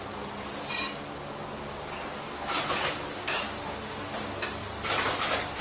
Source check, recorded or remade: recorded